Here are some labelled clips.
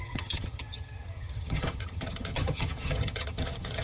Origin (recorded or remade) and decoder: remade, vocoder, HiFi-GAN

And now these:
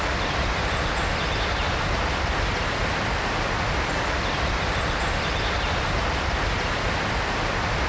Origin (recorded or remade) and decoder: recorded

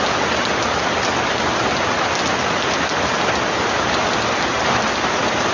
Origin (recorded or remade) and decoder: recorded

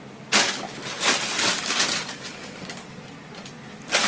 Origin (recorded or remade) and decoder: recorded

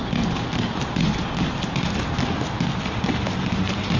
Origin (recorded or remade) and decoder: recorded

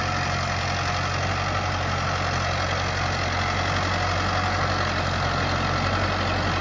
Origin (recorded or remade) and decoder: recorded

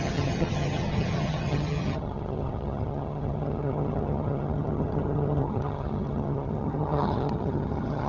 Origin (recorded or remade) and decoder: remade, vocoder, HiFi-GAN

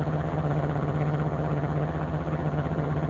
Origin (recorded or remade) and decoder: remade, vocoder, HiFi-GAN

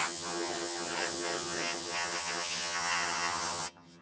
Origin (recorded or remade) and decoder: remade, vocoder, HiFi-GAN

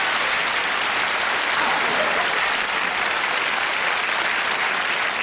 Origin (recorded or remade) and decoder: recorded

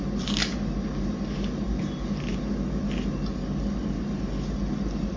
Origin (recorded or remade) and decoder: recorded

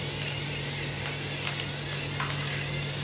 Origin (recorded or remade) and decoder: recorded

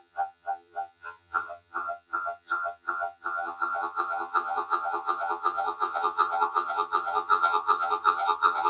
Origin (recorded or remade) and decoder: remade, vocoder, HiFi-GAN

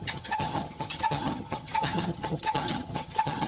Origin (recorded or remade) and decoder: remade, vocoder, HiFi-GAN